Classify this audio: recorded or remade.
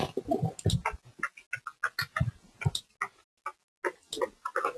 recorded